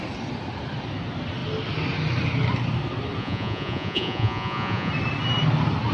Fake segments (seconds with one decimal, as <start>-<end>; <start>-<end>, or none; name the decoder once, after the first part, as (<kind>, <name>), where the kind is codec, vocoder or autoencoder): 3.2-4.9 (vocoder, Vocos)

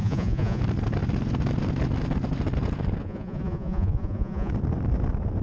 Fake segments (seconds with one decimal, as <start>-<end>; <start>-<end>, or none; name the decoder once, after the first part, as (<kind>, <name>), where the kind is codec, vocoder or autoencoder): 0.0-0.6 (vocoder, Vocos); 3.0-4.5

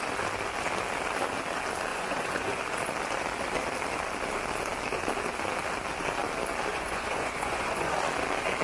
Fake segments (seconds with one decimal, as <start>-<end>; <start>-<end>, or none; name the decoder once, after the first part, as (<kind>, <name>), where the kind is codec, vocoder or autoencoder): 1.9-2.6 (vocoder, Vocos); 6.7-7.9

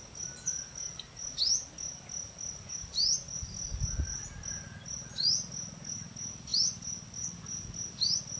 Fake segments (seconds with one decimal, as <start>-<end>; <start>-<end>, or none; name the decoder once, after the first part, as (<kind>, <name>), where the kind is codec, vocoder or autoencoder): none

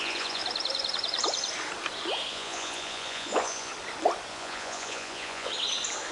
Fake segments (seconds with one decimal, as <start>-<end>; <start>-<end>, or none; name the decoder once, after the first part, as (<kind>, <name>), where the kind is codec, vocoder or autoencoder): 0.0-0.4 (vocoder, Vocos); 2.3-3.7; 4.3-5.5

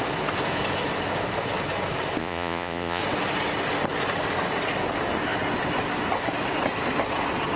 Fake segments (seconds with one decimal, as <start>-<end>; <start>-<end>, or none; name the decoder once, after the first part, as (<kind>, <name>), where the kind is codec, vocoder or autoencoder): 2.2-3.0 (vocoder, Vocos)

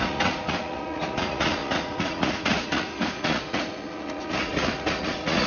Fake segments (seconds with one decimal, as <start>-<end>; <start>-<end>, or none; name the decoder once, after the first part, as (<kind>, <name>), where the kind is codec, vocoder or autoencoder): 0.0-5.5 (vocoder, Vocos)

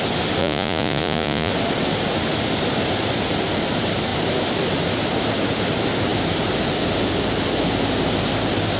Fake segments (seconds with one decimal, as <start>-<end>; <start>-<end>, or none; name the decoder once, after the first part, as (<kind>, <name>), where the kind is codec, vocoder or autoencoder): 0.4-1.5 (vocoder, Vocos)